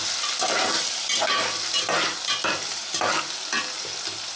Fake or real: fake